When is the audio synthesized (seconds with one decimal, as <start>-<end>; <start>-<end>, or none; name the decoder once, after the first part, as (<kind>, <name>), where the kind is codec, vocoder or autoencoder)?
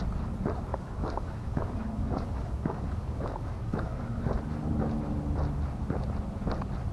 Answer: 0.7-4.2 (codec, DAC)